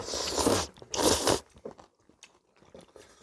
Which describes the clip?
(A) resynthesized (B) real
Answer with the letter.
B